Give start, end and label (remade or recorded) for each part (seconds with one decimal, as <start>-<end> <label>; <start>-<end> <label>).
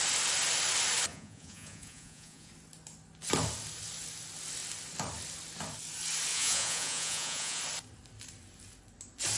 0.0-1.1 recorded; 1.1-2.5 remade; 2.5-6.3 recorded; 6.3-7.6 remade; 7.6-9.4 recorded